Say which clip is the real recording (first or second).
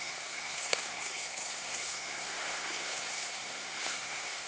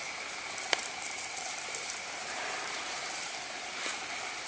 second